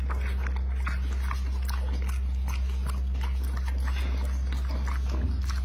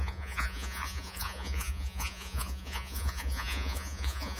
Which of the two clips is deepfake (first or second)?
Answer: second